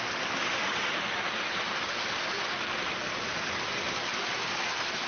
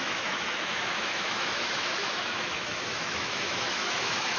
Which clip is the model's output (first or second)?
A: second